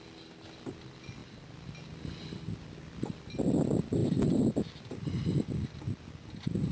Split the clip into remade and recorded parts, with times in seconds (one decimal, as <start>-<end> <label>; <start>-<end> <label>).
0.0-6.7 recorded